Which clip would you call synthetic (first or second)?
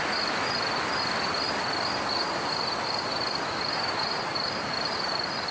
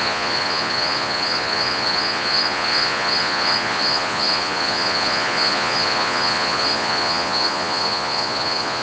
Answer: second